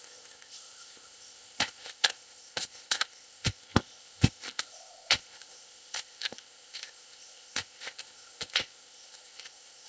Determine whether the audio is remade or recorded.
remade